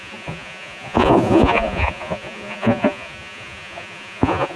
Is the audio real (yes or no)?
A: no